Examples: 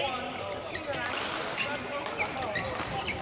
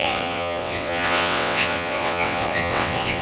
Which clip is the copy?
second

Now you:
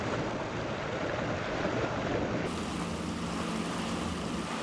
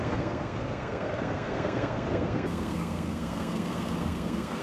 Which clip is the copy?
second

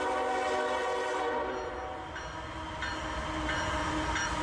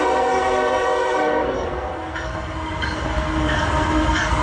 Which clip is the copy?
second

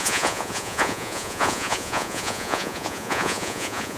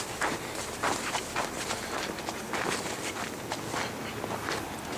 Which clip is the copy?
first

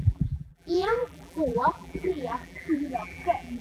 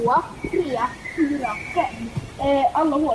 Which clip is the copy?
first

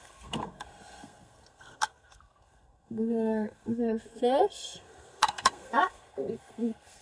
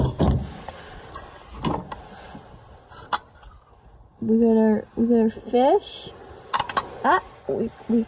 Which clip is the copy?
first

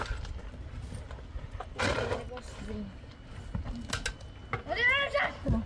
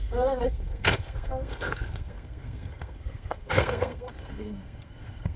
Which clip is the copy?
second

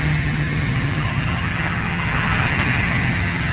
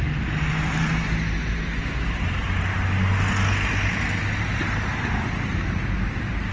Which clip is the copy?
first